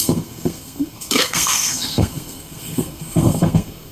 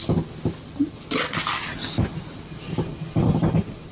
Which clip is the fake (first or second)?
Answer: first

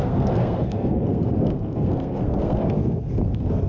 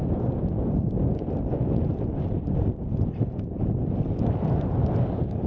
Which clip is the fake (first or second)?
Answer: first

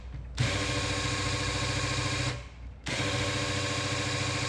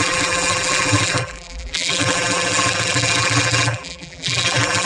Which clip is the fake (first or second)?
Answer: second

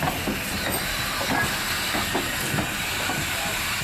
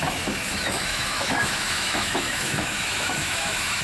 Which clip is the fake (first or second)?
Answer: second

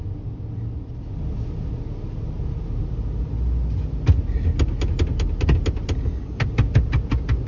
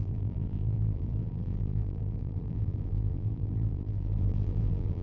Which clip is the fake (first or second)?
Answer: second